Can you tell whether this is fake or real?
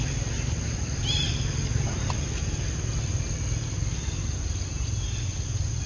real